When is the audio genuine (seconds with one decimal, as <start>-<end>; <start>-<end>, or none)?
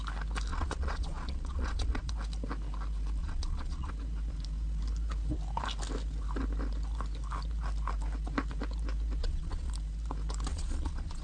0.0-0.5; 2.1-3.2; 3.9-9.2; 9.7-10.5